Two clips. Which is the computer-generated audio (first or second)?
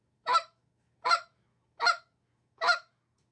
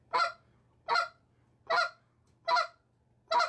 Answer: first